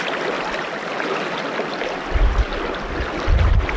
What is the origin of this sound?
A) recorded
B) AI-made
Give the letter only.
A